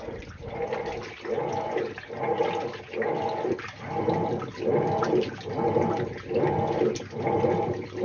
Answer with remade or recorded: recorded